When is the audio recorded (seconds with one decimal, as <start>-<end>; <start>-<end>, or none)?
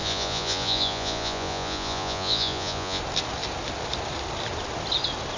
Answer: 3.0-5.4